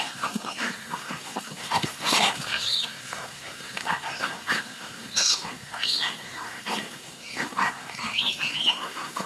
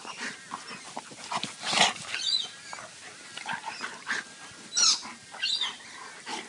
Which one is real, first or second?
second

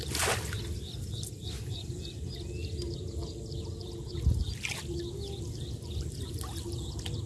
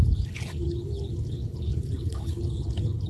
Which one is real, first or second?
first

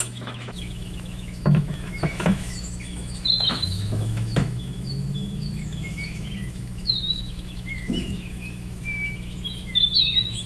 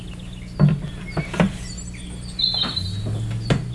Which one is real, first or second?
second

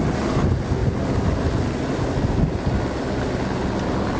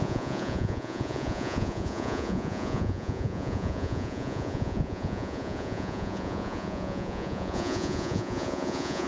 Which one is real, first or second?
first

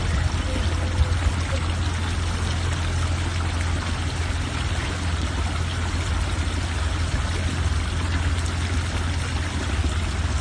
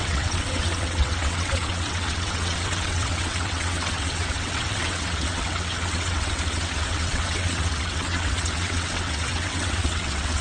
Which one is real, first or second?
first